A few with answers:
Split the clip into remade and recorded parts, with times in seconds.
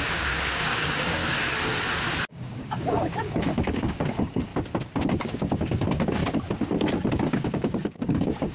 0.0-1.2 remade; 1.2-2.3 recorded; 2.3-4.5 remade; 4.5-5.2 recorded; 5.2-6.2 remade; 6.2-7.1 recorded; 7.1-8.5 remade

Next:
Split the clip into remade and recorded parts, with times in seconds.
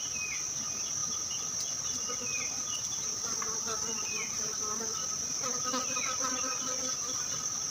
0.0-7.7 recorded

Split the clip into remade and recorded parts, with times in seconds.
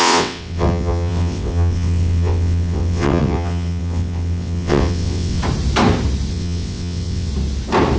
0.0-5.4 remade; 5.4-6.3 recorded; 6.3-7.3 remade; 7.3-8.0 recorded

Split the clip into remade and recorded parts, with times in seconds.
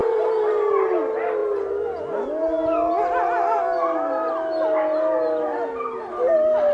0.0-0.5 remade; 0.5-6.7 recorded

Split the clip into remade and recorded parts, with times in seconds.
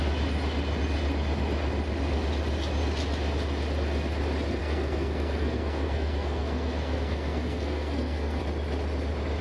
0.0-4.6 recorded; 4.6-8.4 remade; 8.4-9.4 recorded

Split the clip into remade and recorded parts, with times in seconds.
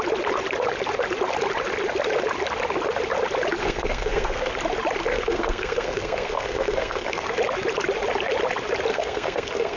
0.0-3.6 recorded; 3.6-4.5 remade; 4.5-5.1 recorded; 5.1-7.3 remade; 7.3-8.9 recorded; 8.9-9.8 remade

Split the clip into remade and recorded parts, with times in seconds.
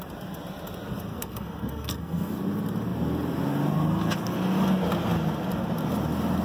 0.0-1.1 recorded; 1.1-2.3 remade; 2.3-6.4 recorded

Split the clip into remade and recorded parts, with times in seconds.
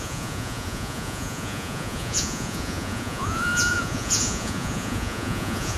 0.0-5.8 remade